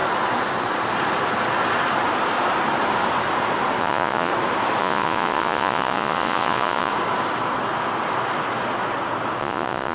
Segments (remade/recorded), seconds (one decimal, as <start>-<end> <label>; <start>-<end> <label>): 0.0-3.8 recorded; 3.8-4.3 remade; 4.3-4.8 recorded; 4.8-6.9 remade; 6.9-9.4 recorded; 9.4-9.9 remade